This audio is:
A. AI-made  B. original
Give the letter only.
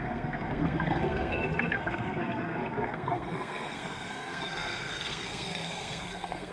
A